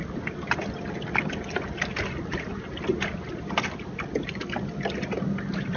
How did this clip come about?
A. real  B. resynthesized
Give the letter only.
A